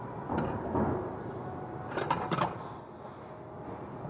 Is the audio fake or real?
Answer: real